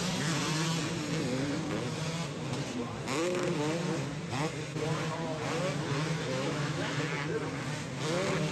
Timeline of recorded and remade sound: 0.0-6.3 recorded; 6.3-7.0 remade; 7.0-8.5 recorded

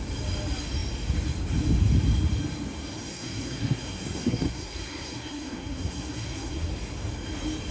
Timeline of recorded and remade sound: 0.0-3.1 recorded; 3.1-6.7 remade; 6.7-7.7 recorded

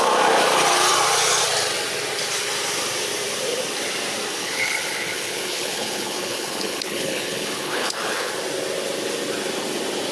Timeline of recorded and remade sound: 0.0-4.4 recorded; 4.4-8.3 remade; 8.3-10.1 recorded